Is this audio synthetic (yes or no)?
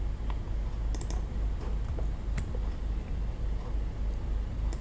no